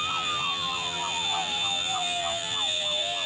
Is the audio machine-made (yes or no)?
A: yes